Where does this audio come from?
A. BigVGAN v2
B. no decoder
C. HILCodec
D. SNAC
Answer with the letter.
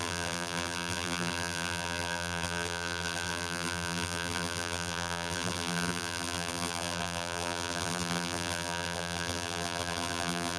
A